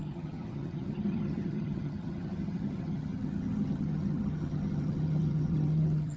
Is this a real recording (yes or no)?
no